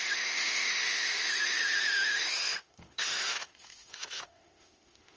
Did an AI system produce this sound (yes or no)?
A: yes